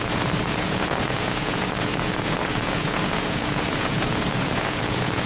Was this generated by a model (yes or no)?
yes